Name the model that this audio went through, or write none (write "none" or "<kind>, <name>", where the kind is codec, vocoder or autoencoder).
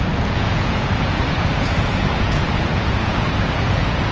vocoder, Vocos